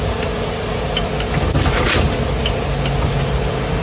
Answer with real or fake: real